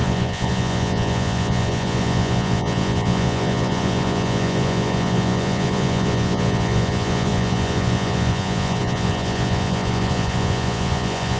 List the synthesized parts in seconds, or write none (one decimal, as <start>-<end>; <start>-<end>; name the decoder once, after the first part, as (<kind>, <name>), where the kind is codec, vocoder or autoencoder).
0.0-11.4 (vocoder, Vocos)